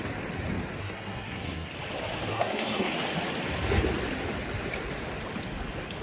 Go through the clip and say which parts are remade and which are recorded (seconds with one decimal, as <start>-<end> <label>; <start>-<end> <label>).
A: 0.0-0.8 recorded; 0.8-1.7 remade; 1.7-2.3 recorded; 2.3-2.9 remade; 2.9-6.0 recorded